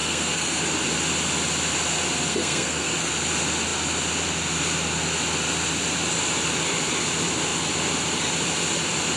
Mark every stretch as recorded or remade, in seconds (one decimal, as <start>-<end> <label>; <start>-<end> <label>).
0.0-0.6 remade; 0.6-2.3 recorded; 2.3-3.1 remade; 3.1-9.2 recorded